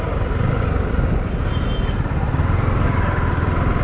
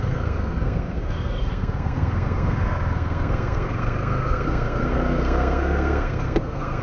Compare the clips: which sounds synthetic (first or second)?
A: second